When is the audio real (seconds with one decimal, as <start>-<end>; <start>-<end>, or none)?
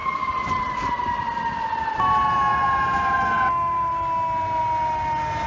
0.0-5.5